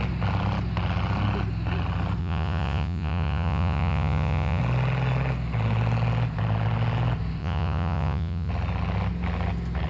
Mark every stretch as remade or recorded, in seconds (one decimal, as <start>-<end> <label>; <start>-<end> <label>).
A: 0.0-2.2 recorded; 2.2-4.6 remade; 4.6-7.4 recorded; 7.4-8.5 remade; 8.5-9.9 recorded